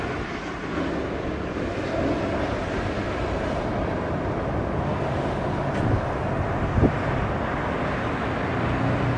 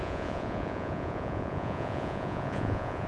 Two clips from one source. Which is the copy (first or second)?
second